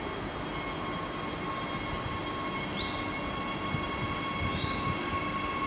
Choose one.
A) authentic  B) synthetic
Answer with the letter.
A